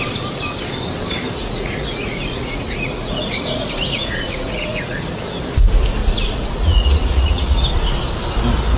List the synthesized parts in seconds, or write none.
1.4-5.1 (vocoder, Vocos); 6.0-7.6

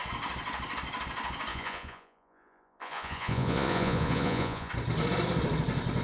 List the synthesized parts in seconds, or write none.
1.5-4.7 (vocoder, Vocos)

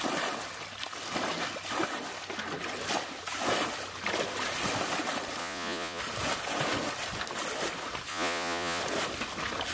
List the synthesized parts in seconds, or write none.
5.4-6.0 (vocoder, Vocos); 8.1-8.8

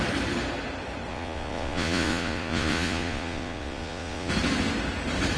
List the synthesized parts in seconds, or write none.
1.1-4.3 (vocoder, Vocos)

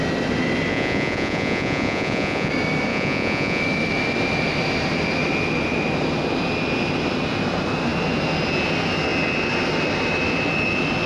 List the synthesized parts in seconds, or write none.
0.7-2.5 (vocoder, Vocos); 2.9-3.6

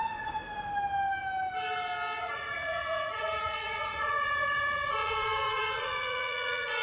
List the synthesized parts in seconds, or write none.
0.0-0.4 (vocoder, Vocos); 2.2-6.8

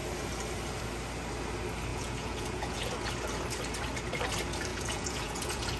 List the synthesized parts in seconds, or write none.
1.9-2.9 (vocoder, Vocos); 4.7-5.8